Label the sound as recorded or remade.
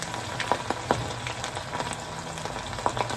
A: recorded